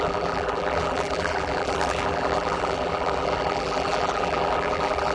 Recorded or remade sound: remade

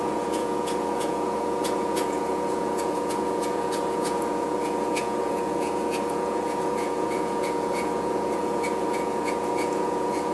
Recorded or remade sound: remade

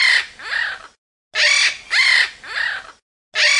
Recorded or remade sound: recorded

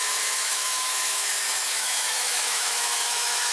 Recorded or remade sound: remade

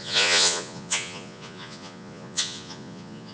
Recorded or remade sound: remade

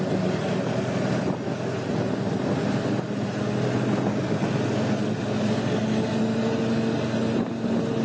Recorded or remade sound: recorded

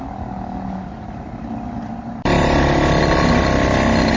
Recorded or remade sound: recorded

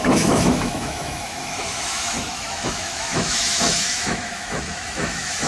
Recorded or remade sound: remade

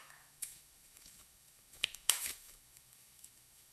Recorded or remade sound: remade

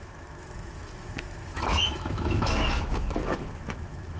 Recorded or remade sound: remade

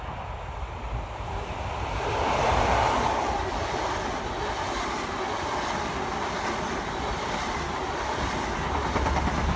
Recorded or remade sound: recorded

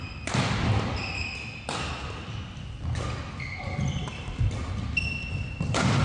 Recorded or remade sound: recorded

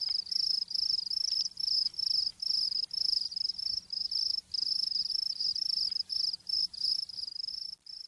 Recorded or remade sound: recorded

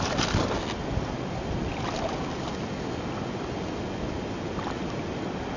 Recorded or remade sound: recorded